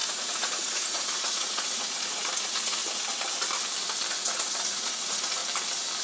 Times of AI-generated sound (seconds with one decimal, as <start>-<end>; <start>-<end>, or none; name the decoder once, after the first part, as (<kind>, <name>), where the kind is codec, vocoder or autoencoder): 0.0-2.8 (vocoder, Vocos); 4.1-5.4